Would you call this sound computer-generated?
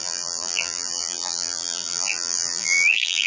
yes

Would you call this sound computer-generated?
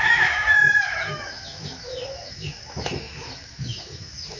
yes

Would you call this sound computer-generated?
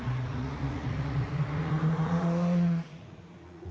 yes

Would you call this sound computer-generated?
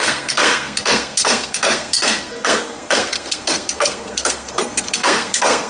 yes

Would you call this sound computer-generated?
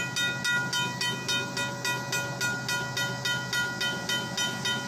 no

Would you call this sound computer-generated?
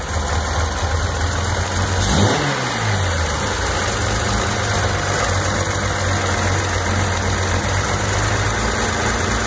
no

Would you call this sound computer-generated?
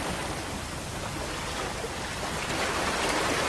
no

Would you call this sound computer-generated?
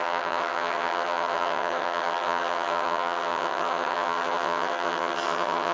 yes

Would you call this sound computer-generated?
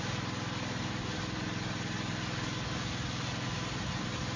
no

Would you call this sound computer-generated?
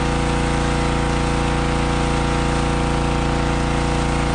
no